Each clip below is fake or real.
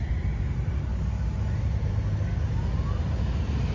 real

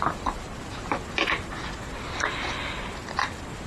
real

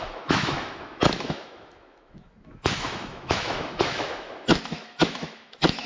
fake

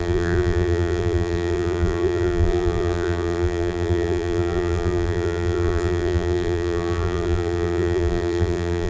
fake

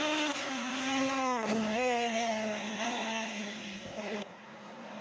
fake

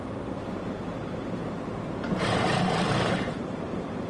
fake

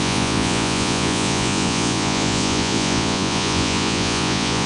fake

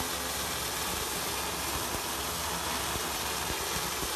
real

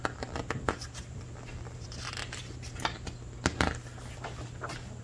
real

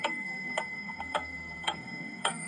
fake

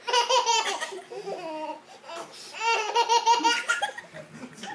real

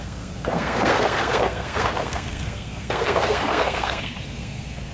fake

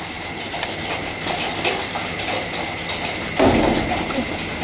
real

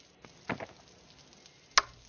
real